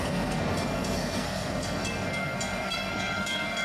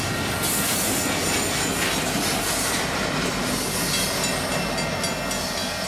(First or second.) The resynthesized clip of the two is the first